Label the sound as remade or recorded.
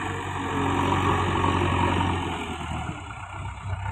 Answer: recorded